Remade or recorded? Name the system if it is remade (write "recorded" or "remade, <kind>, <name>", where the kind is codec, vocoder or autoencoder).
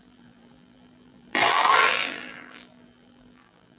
remade, vocoder, BigVGAN v2